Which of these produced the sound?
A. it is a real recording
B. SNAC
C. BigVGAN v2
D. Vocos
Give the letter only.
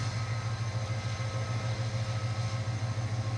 A